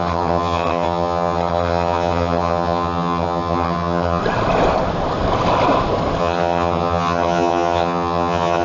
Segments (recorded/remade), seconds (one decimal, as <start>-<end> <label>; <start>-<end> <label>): 0.0-4.2 remade; 4.2-6.2 recorded; 6.2-8.6 remade

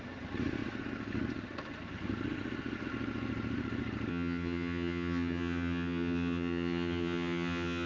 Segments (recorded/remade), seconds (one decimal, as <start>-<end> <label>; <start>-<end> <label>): 0.0-4.1 recorded; 4.1-7.9 remade